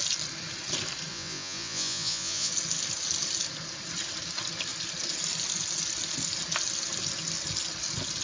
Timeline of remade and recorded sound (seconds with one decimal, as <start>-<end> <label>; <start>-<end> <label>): 0.0-1.1 recorded; 1.1-2.5 remade; 2.5-8.2 recorded